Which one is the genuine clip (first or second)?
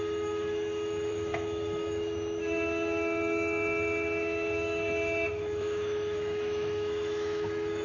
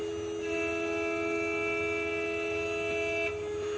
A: second